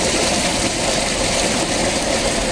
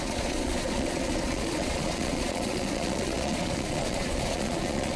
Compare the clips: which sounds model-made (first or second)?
second